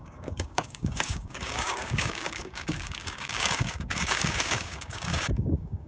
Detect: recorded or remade remade